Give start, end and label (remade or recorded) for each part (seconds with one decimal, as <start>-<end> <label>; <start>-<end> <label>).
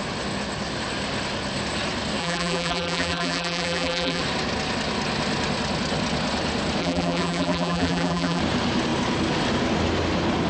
0.0-2.2 recorded; 2.2-4.2 remade; 4.2-6.8 recorded; 6.8-8.4 remade; 8.4-10.5 recorded